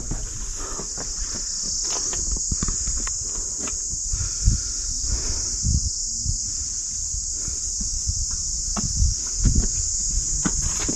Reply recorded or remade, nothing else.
recorded